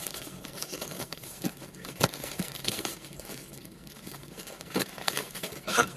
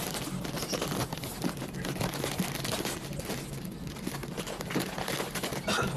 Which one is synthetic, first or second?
first